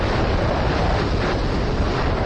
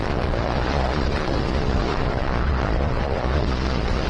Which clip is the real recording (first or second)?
first